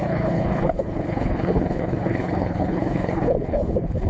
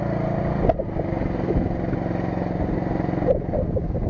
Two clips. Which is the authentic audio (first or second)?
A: second